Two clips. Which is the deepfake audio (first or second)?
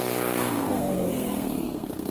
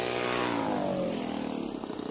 first